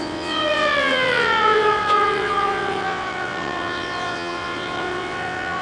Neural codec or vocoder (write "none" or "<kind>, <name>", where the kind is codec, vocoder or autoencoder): vocoder, WaveNeXt